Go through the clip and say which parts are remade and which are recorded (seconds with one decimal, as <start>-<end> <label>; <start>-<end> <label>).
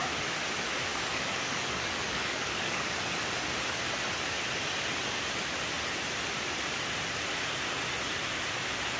0.0-0.9 recorded; 0.9-2.9 remade; 2.9-9.0 recorded